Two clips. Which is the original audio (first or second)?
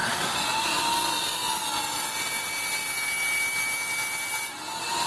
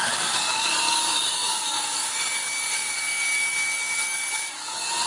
first